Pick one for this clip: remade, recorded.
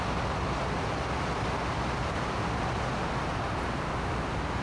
recorded